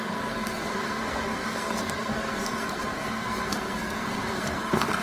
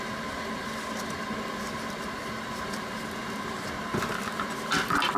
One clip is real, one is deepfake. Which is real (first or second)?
second